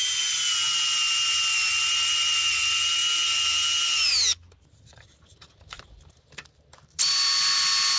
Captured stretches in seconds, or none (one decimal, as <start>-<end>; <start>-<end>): 0.0-8.0